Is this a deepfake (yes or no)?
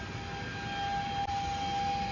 no